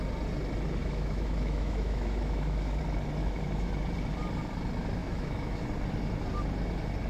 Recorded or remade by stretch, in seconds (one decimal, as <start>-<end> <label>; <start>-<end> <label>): 0.0-0.8 recorded; 0.8-2.8 remade; 2.8-3.2 recorded; 3.2-3.7 remade; 3.7-5.0 recorded; 5.0-5.6 remade; 5.6-7.1 recorded